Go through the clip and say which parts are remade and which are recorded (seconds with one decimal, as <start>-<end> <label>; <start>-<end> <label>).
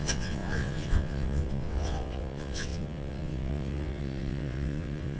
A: 0.0-5.2 remade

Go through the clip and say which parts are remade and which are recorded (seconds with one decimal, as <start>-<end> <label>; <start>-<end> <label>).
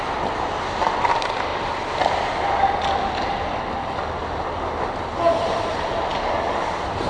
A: 0.0-7.1 recorded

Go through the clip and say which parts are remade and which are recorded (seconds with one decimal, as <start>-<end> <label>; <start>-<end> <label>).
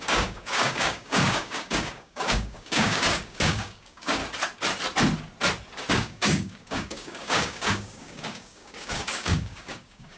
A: 0.0-4.2 remade; 4.2-5.9 recorded; 5.9-10.2 remade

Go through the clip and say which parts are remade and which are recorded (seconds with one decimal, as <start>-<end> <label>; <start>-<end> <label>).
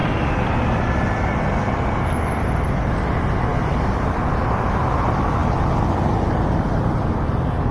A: 0.0-7.7 recorded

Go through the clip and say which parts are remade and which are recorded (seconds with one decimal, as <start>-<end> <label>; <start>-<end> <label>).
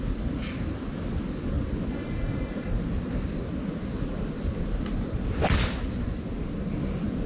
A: 0.0-1.9 recorded; 1.9-2.7 remade; 2.7-7.3 recorded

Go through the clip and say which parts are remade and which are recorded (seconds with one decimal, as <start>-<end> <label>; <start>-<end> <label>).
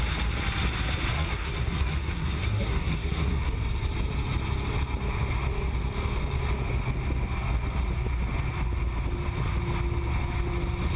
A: 0.0-1.1 recorded; 1.1-3.4 remade; 3.4-11.0 recorded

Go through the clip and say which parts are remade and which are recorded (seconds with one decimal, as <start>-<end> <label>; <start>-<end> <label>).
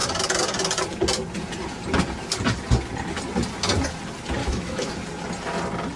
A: 0.0-4.4 recorded; 4.4-4.9 remade; 4.9-6.0 recorded